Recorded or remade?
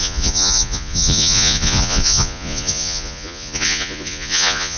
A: remade